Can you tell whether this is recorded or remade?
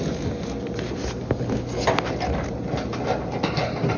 recorded